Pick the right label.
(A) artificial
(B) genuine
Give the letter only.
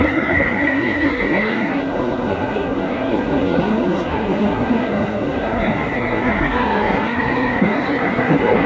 A